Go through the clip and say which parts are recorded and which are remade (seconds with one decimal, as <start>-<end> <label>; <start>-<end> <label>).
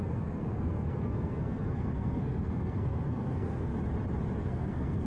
0.0-3.7 remade; 3.7-4.4 recorded; 4.4-5.1 remade